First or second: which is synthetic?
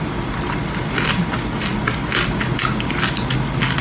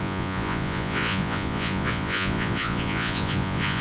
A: second